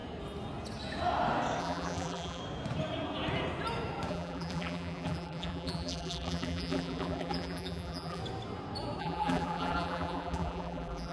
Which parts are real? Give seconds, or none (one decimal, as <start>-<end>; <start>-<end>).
0.0-1.6; 2.4-4.1; 8.2-9.0